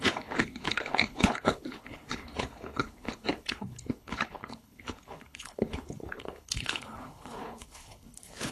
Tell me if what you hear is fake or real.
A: fake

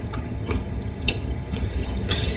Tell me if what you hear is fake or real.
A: fake